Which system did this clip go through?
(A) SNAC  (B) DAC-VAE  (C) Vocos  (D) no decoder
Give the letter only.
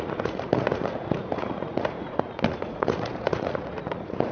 C